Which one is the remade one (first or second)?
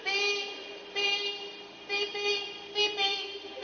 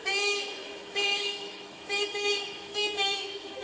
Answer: second